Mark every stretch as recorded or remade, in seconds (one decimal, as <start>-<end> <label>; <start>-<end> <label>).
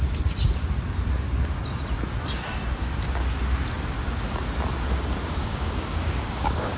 0.0-5.4 recorded; 5.4-6.8 remade